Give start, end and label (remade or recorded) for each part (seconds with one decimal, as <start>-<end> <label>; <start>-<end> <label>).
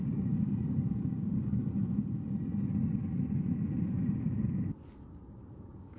0.0-1.6 remade; 1.6-5.2 recorded; 5.2-6.0 remade